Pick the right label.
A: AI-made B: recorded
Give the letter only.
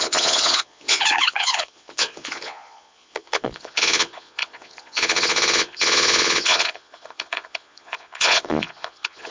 A